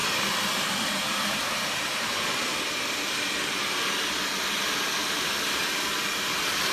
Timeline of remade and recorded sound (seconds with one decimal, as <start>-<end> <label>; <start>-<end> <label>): 0.0-2.5 remade; 2.5-5.0 recorded; 5.0-5.7 remade; 5.7-6.7 recorded